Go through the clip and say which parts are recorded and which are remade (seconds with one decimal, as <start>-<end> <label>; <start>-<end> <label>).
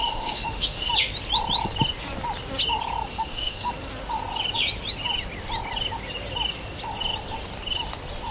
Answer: 0.0-0.9 remade; 0.9-3.1 recorded; 3.1-3.7 remade; 3.7-8.3 recorded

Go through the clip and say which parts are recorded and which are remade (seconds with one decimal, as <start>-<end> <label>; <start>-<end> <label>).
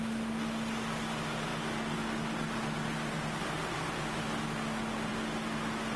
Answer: 0.0-6.0 recorded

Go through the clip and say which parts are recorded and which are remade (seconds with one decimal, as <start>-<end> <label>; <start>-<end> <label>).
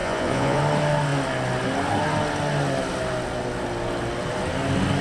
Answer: 0.0-0.6 remade; 0.6-5.0 recorded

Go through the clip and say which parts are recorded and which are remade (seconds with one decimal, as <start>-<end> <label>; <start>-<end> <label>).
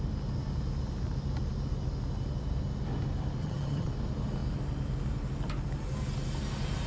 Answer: 0.0-3.4 recorded; 3.4-3.9 remade; 3.9-6.9 recorded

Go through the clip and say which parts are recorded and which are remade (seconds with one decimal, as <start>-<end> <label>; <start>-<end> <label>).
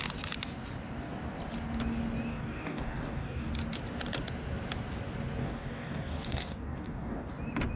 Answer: 0.0-2.3 recorded; 2.3-3.5 remade; 3.5-5.4 recorded; 5.4-7.3 remade; 7.3-7.8 recorded